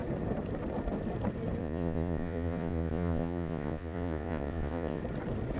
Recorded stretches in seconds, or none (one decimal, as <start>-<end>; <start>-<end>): 0.0-1.6; 5.0-5.6

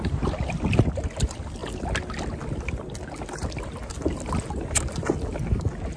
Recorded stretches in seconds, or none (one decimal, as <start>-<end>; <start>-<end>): 0.0-6.0

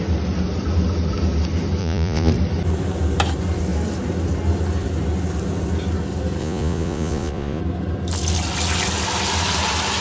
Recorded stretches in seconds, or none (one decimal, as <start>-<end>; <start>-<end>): 0.0-1.8; 2.3-6.4; 7.6-10.0

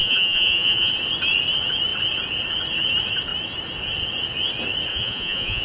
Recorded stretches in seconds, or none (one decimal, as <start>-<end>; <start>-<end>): 0.9-4.9

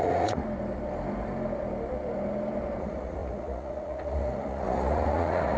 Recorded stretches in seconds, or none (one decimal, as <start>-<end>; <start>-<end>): 0.4-2.8

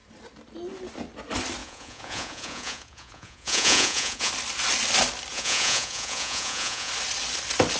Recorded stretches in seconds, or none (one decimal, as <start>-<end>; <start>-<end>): 0.0-1.6; 4.3-5.3; 6.9-7.8

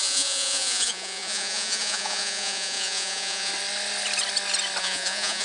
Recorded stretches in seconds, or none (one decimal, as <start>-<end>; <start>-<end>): 3.5-4.8

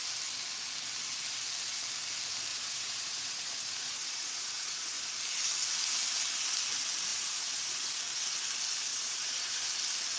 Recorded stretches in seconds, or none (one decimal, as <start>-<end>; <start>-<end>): 0.0-2.5; 5.0-7.1; 7.9-8.9; 9.6-10.2